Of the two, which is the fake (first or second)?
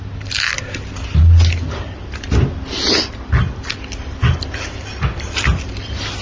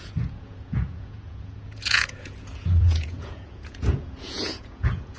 second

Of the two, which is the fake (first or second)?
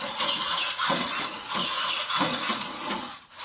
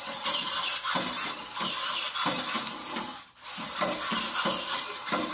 first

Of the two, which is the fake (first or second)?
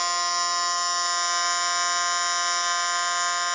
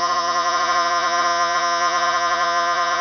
second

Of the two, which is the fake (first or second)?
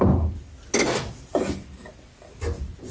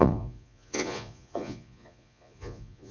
second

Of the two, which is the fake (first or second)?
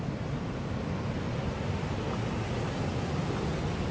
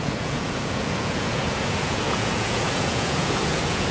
second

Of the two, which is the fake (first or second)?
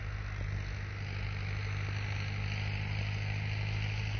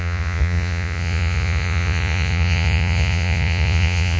second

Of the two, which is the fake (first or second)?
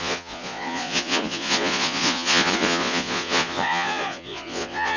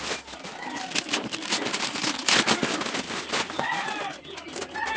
first